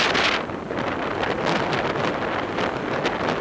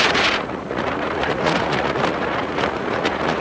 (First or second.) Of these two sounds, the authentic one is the first